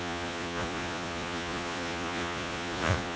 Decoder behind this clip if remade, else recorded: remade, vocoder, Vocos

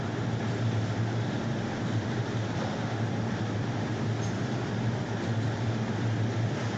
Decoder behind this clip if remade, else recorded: recorded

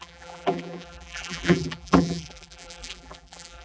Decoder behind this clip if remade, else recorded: remade, vocoder, BigVGAN v2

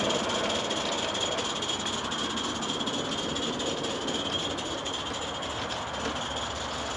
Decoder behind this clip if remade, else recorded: recorded